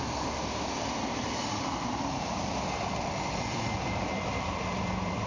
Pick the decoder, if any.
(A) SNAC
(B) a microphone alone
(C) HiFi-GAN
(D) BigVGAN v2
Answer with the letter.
D